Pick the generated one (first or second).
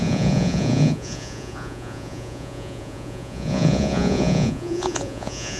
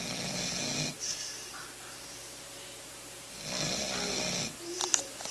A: first